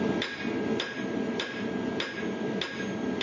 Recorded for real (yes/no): yes